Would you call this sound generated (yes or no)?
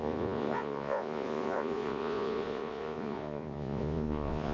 yes